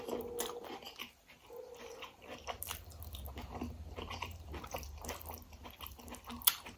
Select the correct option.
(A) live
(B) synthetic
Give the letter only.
A